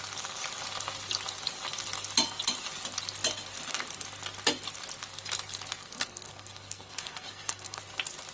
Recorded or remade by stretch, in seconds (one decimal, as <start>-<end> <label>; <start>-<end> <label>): 0.0-5.8 recorded; 5.8-7.8 remade; 7.8-8.3 recorded